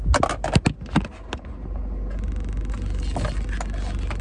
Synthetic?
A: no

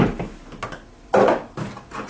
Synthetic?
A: no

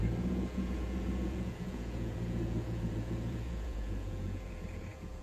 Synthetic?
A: yes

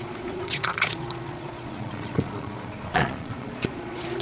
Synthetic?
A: yes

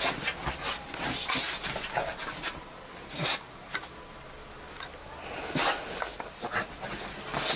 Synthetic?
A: no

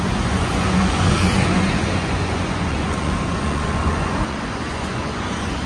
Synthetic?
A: yes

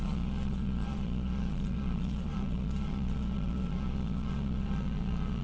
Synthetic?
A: yes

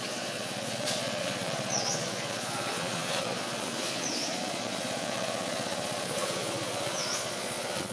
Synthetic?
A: yes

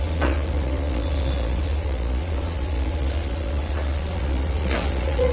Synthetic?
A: yes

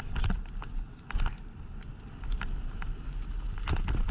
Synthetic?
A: no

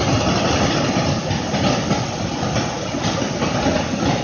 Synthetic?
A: no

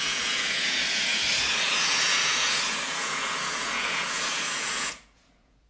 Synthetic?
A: yes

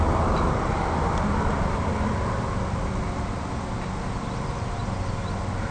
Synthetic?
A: no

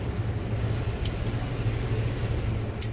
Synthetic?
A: no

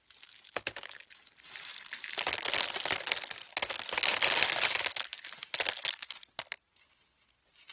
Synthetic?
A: no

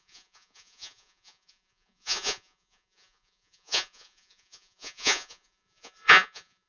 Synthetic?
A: yes